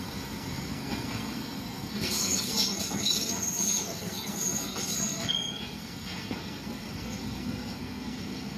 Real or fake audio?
fake